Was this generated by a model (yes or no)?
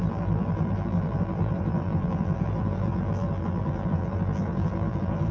yes